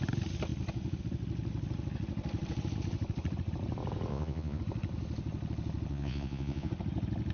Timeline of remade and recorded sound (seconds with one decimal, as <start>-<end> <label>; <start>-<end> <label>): 0.0-4.1 recorded; 4.1-4.6 remade; 4.6-5.9 recorded; 5.9-6.7 remade; 6.7-7.3 recorded